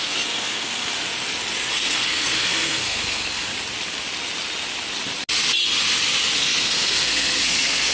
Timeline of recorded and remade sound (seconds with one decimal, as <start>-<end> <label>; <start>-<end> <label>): 0.0-0.9 remade; 0.9-1.7 recorded; 1.7-3.5 remade; 3.5-6.4 recorded; 6.4-7.9 remade